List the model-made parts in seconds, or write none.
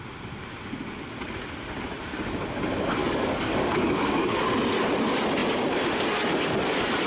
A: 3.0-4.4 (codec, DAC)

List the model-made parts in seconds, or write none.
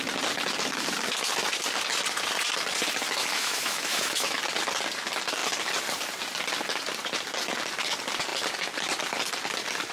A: 3.2-4.4 (autoencoder, DAC-VAE)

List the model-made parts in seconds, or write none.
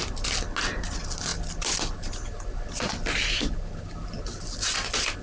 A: none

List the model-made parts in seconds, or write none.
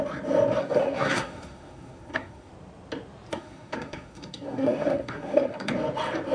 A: 0.6-2.5 (codec, SNAC); 3.3-5.7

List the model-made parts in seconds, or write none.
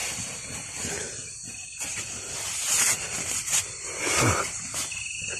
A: 3.2-5.4 (vocoder, BigVGAN v2)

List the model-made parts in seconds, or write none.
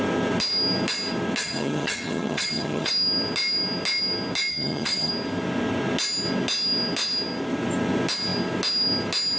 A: 1.4-2.9 (vocoder, HiFi-GAN); 4.5-5.1